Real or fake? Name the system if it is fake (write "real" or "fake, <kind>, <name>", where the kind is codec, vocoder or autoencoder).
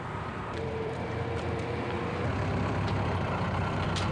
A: fake, vocoder, BigVGAN v2